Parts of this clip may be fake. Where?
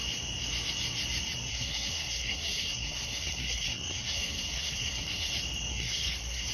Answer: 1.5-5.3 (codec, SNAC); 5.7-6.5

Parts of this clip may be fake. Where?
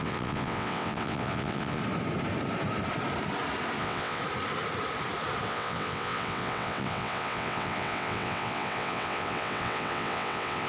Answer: 0.0-1.8 (vocoder, WaveNeXt); 3.8-4.2; 5.5-10.7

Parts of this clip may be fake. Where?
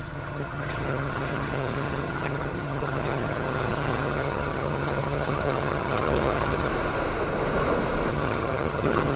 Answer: 0.0-6.7 (vocoder, HiFi-GAN); 8.1-9.2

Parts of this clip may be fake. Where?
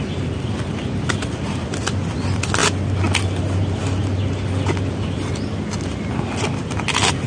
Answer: none